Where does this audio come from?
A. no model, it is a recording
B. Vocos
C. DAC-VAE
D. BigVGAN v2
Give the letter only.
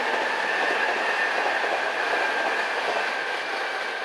A